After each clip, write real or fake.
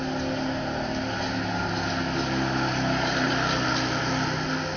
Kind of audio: real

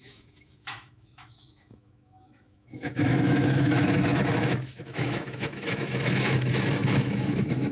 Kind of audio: fake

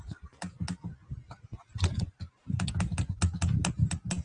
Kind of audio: real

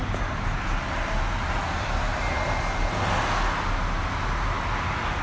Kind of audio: real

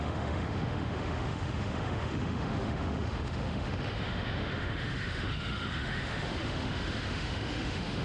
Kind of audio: fake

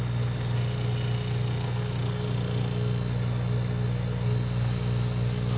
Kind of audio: real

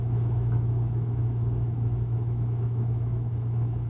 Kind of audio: fake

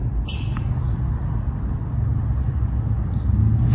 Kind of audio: real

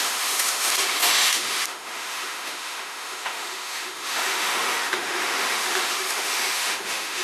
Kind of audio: fake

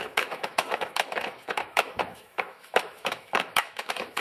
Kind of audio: fake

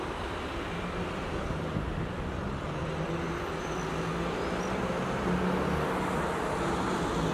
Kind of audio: real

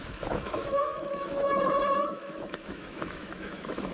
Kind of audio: fake